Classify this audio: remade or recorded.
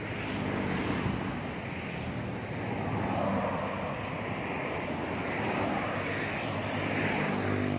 recorded